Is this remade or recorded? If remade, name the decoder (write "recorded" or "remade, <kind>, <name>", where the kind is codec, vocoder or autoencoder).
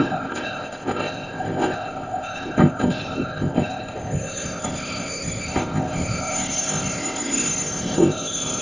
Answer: remade, codec, ZipCodec